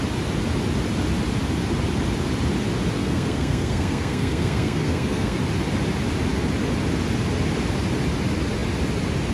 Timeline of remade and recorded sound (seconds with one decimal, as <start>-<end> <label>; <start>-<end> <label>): 0.0-3.0 recorded; 3.0-5.4 remade; 5.4-9.3 recorded